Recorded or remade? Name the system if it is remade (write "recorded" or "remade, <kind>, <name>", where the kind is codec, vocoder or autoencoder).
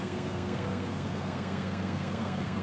remade, codec, SNAC